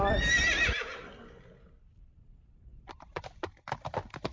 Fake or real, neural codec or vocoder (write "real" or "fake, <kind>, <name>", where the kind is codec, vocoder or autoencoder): fake, vocoder, BigVGAN v2